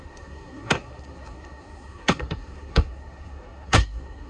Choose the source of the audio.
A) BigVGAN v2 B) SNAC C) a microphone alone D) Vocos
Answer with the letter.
B